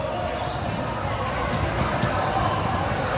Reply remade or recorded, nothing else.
recorded